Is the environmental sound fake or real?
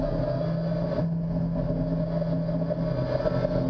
real